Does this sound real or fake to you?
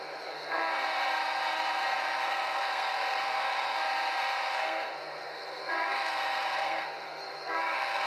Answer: fake